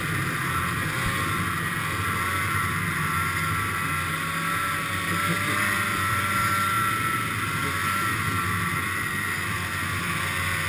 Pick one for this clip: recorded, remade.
recorded